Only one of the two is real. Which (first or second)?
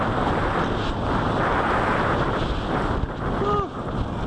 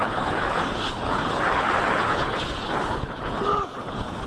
first